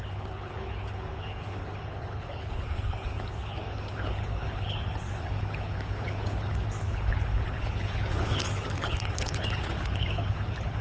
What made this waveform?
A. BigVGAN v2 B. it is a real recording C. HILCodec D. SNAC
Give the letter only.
C